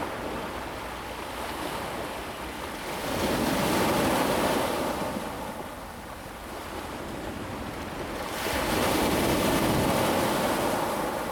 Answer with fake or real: real